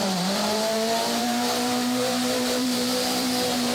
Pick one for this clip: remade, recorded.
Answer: remade